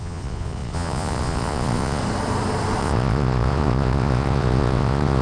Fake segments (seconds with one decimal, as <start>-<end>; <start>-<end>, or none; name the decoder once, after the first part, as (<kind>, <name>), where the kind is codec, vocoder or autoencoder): 0.0-2.0 (vocoder, Vocos); 2.8-5.2